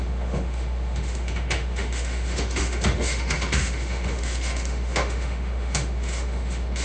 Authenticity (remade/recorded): remade